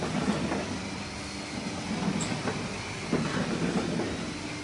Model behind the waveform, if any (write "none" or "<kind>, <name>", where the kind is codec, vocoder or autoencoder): none